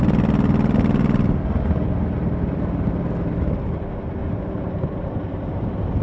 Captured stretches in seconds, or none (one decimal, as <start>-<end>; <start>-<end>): 0.0-4.2

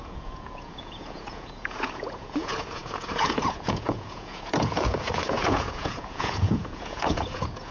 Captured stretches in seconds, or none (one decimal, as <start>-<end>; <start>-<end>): none

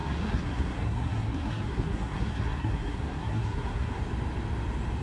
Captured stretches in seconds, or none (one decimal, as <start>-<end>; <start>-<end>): 4.0-5.0

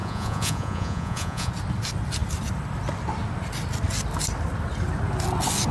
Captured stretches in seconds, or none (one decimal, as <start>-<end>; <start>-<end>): 1.5-5.7